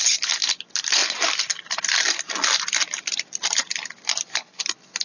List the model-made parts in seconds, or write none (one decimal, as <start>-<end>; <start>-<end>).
none